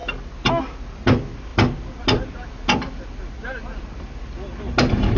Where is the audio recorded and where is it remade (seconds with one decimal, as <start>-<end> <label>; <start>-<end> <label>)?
0.0-5.2 recorded

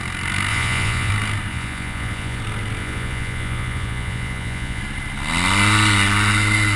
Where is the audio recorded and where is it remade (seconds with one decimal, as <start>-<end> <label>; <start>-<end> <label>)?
0.0-0.5 recorded; 0.5-1.1 remade; 1.1-1.5 recorded; 1.5-2.4 remade; 2.4-2.8 recorded; 2.8-4.8 remade; 4.8-6.8 recorded